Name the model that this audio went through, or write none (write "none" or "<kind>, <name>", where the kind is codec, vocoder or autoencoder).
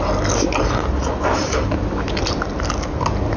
none